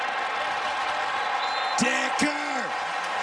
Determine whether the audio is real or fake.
real